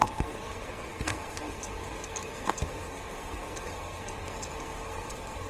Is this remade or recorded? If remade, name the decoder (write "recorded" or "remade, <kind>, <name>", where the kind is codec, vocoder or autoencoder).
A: remade, codec, SNAC